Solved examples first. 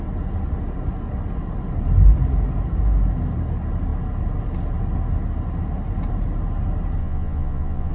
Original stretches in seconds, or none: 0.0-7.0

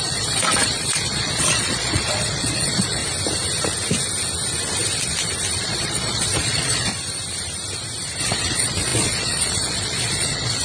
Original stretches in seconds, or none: 3.0-5.6; 6.9-8.2

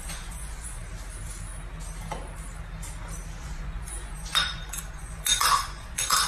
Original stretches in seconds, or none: 0.8-3.4

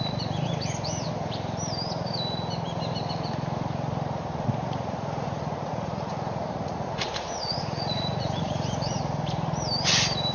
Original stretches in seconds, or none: 0.0-4.6; 9.0-10.3

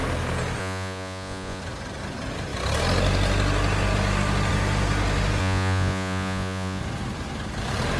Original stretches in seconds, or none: 0.0-0.6; 1.6-5.4; 6.8-8.0

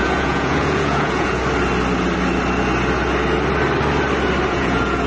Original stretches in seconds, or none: 1.4-4.5